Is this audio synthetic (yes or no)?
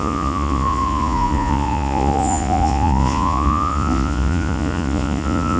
yes